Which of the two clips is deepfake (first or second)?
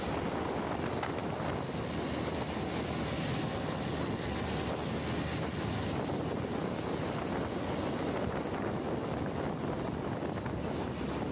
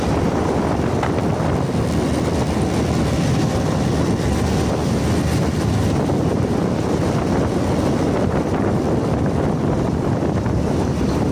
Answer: second